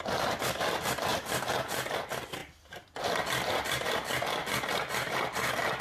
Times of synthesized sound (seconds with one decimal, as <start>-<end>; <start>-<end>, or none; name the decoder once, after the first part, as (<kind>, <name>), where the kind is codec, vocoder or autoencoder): none